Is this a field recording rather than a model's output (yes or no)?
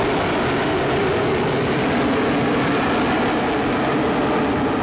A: yes